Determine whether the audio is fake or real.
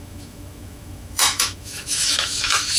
fake